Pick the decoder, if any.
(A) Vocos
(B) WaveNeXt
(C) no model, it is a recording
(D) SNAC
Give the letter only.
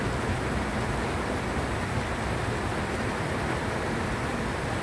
C